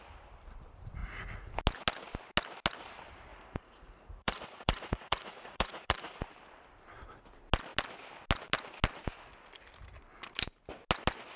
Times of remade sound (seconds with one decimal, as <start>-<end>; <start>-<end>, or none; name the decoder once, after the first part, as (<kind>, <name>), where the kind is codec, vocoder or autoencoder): 1.0-1.5 (vocoder, Vocos); 3.3-6.2